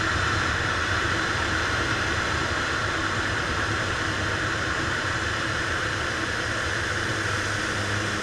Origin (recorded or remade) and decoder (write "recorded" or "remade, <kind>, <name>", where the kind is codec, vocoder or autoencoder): remade, vocoder, BigVGAN v2